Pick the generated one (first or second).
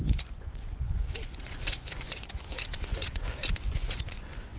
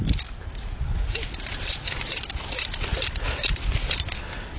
first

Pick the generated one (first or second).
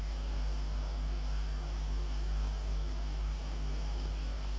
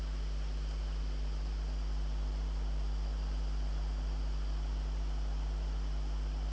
first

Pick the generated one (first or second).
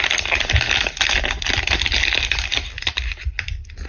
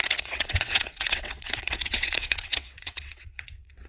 second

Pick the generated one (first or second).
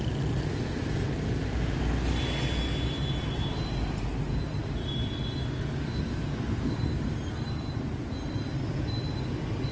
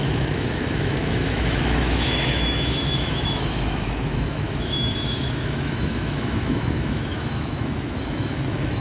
second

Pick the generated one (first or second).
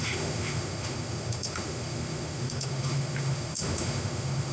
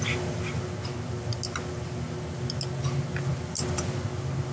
first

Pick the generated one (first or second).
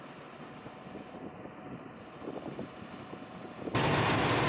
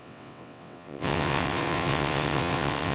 second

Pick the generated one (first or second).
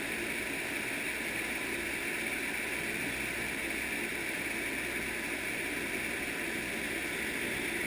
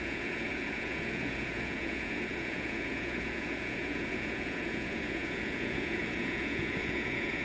second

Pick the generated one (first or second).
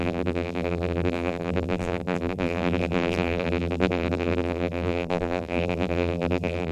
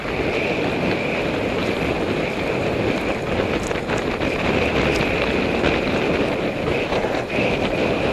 first